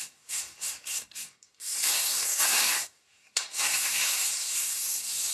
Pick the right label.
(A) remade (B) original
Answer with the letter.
A